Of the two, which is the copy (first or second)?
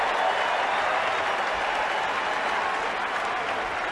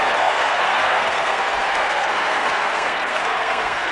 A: second